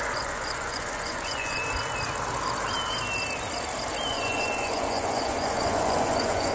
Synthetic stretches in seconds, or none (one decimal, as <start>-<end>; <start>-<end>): 0.0-1.6; 4.1-6.5